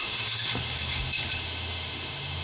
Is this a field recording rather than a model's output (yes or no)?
no